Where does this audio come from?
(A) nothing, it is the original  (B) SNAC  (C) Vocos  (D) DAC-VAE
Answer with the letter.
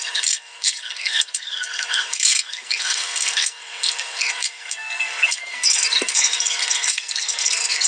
B